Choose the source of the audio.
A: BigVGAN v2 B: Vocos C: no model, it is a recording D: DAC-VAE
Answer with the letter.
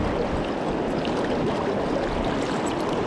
C